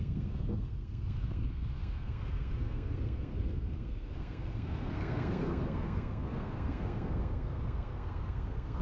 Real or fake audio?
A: fake